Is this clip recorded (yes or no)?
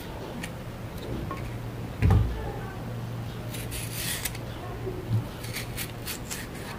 yes